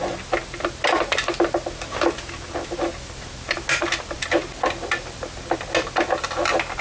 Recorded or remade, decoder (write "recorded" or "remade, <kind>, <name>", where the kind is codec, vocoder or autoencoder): recorded